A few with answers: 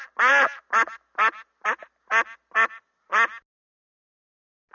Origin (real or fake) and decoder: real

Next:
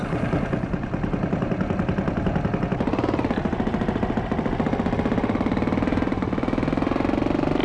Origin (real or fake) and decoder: real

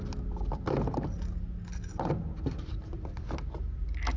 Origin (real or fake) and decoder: real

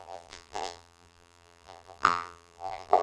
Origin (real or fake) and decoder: fake, vocoder, BigVGAN v2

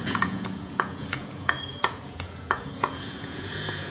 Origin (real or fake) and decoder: fake, vocoder, Vocos